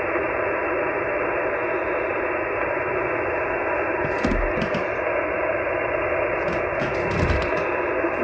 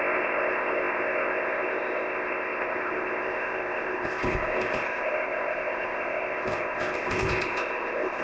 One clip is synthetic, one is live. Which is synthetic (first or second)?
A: second